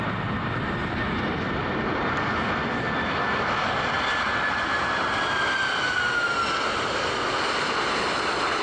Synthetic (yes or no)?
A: no